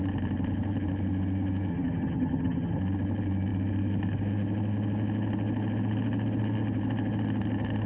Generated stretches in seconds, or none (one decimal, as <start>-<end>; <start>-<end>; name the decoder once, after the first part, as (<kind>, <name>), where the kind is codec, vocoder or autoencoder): 1.7-2.8 (vocoder, HiFi-GAN)